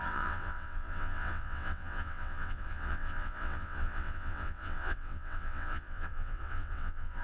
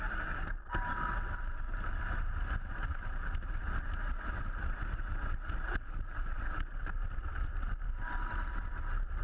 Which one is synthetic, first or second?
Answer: first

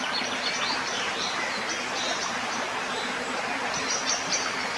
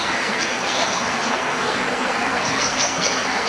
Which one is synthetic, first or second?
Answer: second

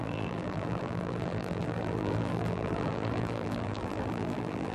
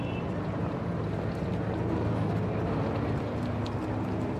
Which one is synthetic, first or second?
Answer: first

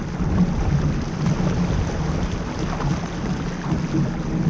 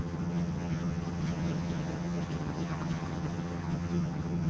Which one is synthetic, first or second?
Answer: second